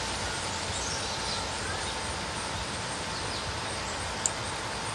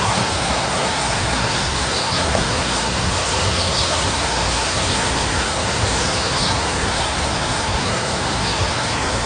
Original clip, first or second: first